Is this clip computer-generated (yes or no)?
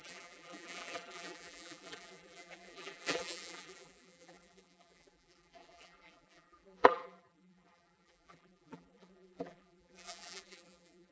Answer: yes